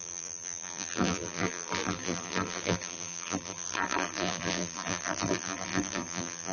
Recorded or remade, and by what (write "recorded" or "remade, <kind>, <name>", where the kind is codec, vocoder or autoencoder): remade, vocoder, BigVGAN v2